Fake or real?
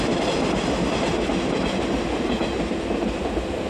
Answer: fake